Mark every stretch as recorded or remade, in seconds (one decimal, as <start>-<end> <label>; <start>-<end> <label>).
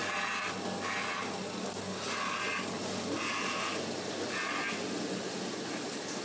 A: 0.0-6.2 recorded